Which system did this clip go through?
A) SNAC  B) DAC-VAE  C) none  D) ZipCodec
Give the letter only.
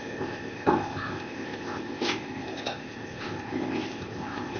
D